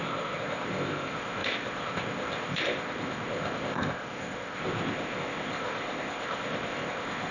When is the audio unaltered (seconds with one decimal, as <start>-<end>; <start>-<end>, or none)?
none